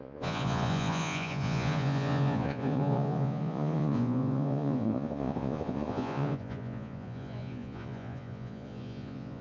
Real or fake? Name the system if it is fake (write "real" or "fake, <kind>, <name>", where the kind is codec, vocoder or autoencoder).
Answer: fake, vocoder, Vocos